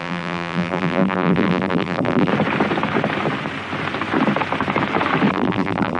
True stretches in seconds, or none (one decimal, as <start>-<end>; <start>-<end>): 2.3-5.3